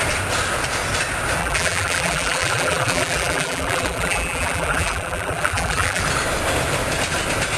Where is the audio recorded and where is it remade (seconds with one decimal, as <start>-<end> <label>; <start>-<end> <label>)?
0.0-1.4 recorded; 1.4-6.0 remade; 6.0-7.6 recorded